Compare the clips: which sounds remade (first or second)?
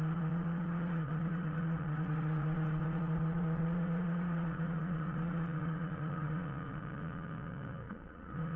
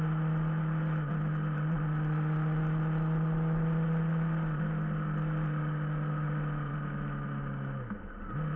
first